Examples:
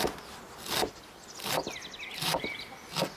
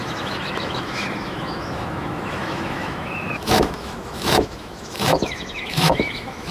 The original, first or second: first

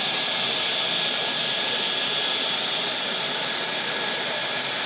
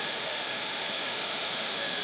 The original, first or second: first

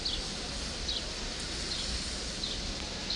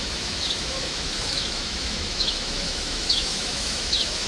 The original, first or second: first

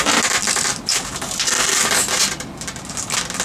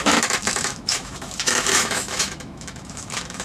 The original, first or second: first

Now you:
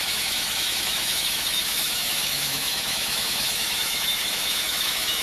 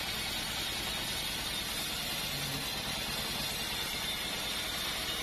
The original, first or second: second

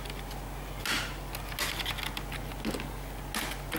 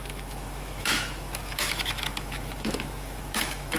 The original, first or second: first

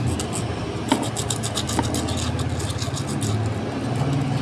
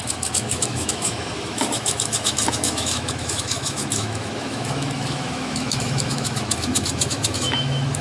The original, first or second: first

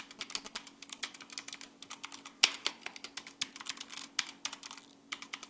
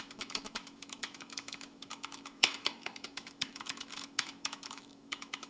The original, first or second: first